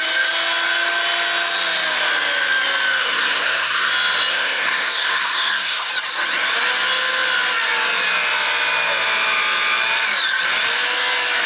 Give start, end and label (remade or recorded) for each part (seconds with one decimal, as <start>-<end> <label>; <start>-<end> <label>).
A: 0.0-3.0 recorded; 3.0-3.9 remade; 3.9-4.3 recorded; 4.3-5.9 remade; 5.9-11.5 recorded